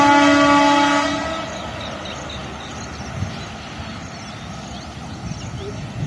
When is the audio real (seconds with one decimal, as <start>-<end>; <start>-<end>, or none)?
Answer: 0.0-6.1